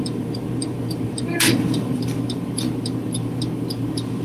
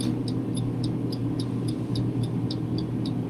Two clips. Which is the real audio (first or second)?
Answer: second